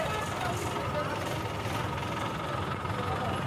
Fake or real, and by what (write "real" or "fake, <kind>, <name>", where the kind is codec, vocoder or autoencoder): real